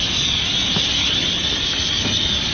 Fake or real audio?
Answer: real